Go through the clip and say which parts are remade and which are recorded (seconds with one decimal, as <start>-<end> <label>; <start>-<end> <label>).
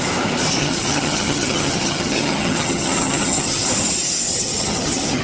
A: 0.0-0.6 recorded; 0.6-3.7 remade; 3.7-4.3 recorded; 4.3-5.2 remade